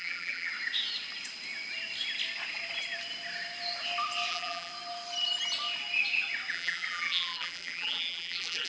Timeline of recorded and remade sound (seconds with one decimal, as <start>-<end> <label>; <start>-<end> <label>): 0.0-0.5 remade; 0.5-4.3 recorded; 4.3-4.7 remade; 4.7-6.5 recorded; 6.5-8.7 remade